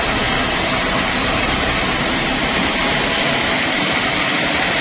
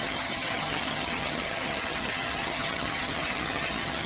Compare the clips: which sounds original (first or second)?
first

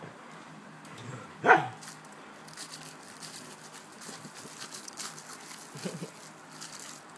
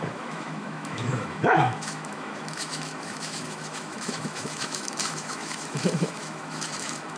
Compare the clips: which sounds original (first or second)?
first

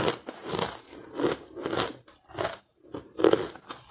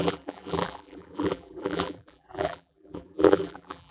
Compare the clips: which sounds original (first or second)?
first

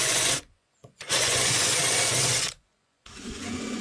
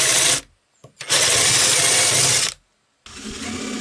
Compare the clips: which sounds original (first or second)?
second